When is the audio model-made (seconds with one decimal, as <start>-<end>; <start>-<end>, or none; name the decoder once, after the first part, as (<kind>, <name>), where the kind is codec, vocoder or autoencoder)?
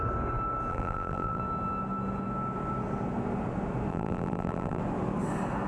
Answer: 0.7-1.4 (vocoder, BigVGAN v2); 3.9-4.8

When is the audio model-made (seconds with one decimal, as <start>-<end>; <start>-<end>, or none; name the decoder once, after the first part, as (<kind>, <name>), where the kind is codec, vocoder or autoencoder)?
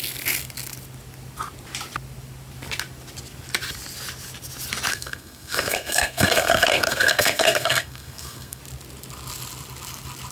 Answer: 4.9-8.6 (codec, SNAC)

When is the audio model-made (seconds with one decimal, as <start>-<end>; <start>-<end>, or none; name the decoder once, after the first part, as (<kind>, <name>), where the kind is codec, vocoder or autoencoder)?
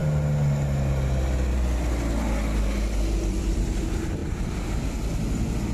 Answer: none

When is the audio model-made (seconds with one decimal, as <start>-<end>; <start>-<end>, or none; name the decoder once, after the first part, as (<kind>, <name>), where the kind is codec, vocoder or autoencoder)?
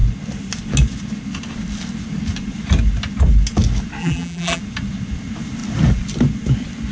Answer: 4.0-4.6 (vocoder, BigVGAN v2)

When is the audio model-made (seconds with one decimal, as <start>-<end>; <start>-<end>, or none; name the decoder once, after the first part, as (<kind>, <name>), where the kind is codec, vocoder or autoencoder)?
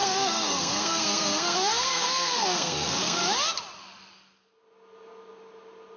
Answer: 0.0-3.2 (codec, SNAC)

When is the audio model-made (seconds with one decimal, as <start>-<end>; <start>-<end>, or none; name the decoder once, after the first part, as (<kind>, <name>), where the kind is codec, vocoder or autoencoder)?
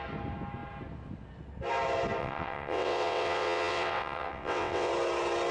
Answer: 2.2-4.9 (vocoder, WaveNeXt)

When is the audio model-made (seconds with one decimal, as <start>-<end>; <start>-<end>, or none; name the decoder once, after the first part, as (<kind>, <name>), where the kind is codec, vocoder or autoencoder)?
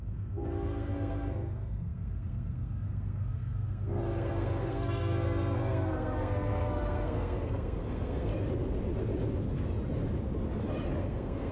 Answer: 0.0-8.3 (codec, SNAC); 11.0-11.5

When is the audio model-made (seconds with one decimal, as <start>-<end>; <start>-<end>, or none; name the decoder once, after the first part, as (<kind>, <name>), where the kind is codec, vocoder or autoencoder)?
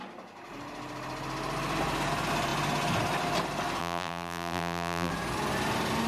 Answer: 3.8-5.1 (vocoder, BigVGAN v2)